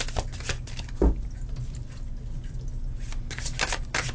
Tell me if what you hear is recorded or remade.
recorded